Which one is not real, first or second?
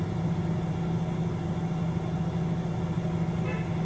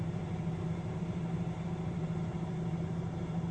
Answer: second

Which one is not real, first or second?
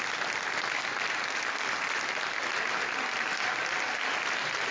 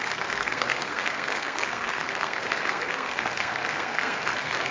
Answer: second